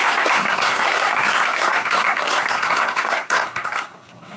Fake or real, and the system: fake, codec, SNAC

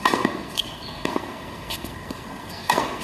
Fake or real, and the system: fake, codec, SNAC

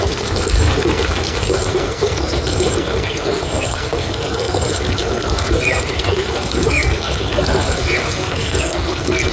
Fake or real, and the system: fake, codec, SNAC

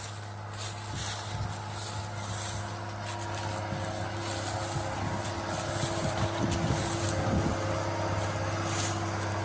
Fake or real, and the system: real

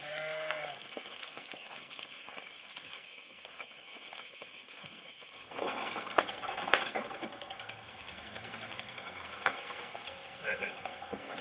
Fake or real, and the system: fake, codec, SNAC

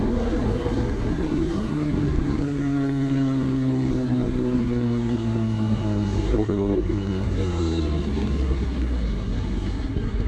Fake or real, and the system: fake, codec, SNAC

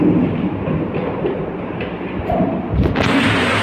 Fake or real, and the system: real